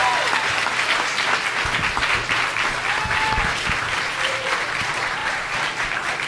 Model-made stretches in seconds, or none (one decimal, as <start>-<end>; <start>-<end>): 3.8-6.3